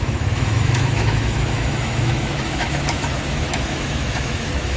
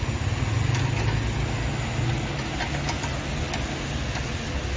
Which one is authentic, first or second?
second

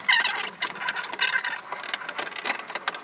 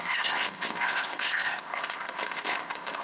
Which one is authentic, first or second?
first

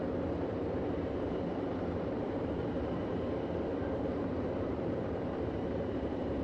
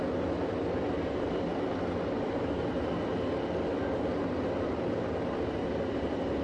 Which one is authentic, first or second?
second